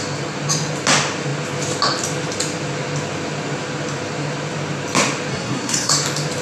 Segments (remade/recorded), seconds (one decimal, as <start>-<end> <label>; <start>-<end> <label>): 0.0-5.3 recorded; 5.3-5.9 remade; 5.9-6.4 recorded